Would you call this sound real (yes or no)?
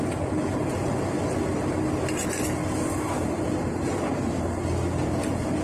yes